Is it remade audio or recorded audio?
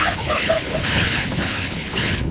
remade